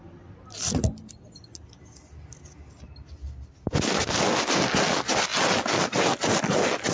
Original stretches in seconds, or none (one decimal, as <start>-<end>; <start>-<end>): 0.0-6.9